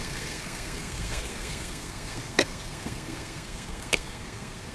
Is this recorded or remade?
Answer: remade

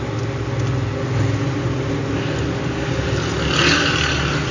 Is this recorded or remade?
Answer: recorded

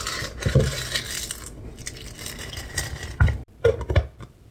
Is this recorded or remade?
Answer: recorded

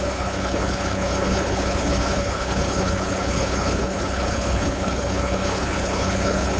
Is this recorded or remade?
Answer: remade